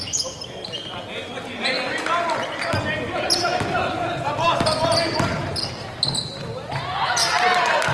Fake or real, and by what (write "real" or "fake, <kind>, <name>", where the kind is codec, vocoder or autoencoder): real